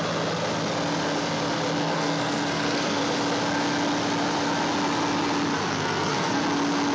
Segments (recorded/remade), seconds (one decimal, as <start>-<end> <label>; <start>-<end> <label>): 0.0-1.8 recorded; 1.8-3.0 remade; 3.0-5.7 recorded; 5.7-6.4 remade; 6.4-6.9 recorded